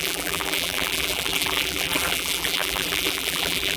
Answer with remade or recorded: remade